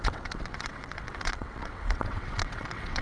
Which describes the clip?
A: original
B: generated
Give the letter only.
B